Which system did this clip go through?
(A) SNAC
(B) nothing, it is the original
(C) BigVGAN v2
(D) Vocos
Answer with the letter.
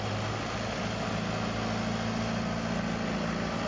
B